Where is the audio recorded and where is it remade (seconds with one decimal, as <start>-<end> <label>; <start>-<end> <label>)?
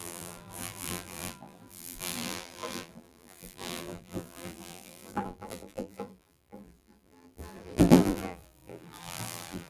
0.0-9.7 remade